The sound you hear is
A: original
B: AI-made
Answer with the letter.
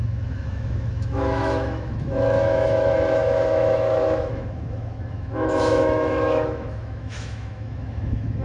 B